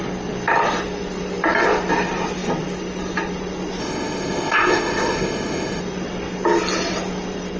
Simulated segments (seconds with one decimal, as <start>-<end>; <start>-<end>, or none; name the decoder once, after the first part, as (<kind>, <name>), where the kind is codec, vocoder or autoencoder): 3.8-5.8 (codec, ZipCodec)